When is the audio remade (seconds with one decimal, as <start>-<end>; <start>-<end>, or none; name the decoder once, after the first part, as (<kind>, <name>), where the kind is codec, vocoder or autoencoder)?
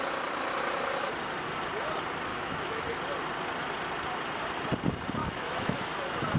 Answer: 2.3-2.8 (autoencoder, DAC-VAE); 5.2-5.9